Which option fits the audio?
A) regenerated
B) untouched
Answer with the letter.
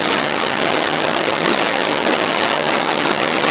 A